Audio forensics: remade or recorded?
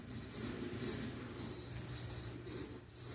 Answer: recorded